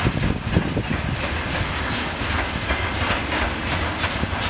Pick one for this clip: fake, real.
real